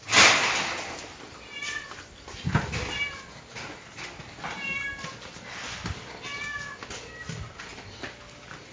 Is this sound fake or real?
real